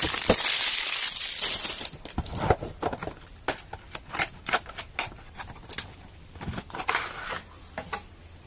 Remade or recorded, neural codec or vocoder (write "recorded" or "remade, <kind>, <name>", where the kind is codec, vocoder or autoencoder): recorded